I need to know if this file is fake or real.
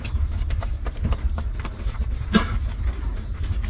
fake